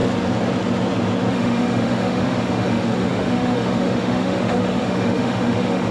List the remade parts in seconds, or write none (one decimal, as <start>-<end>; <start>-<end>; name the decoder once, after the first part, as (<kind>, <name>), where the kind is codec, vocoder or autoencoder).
1.3-5.9 (autoencoder, DAC-VAE)